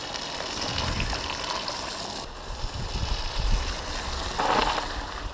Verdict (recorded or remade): recorded